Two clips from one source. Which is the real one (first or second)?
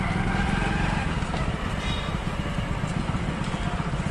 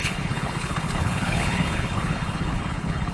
first